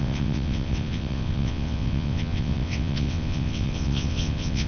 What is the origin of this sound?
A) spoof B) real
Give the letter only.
A